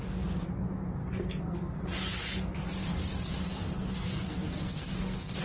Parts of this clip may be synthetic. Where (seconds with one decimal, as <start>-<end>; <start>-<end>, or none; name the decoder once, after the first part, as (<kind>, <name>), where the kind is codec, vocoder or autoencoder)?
1.0-1.8 (codec, SNAC); 3.5-5.4